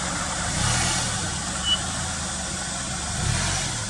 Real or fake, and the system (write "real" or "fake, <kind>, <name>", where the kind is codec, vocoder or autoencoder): real